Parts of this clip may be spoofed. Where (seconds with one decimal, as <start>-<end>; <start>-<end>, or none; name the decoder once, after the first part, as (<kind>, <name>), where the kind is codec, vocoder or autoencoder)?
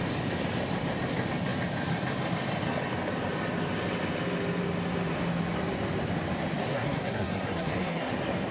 6.6-8.1 (codec, SNAC)